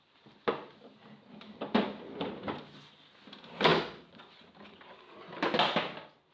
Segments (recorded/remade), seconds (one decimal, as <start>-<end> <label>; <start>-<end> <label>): 0.0-6.3 recorded